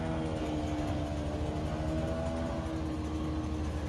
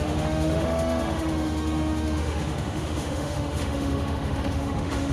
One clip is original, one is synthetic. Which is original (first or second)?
first